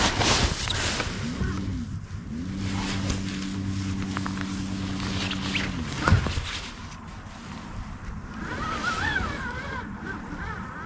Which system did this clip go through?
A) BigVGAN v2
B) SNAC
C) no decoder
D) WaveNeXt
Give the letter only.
C